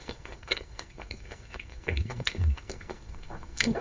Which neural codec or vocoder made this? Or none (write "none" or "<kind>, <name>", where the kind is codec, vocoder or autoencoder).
codec, SNAC